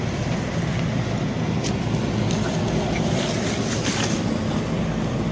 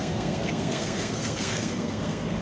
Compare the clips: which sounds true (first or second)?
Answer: first